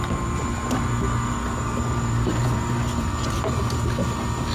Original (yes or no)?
no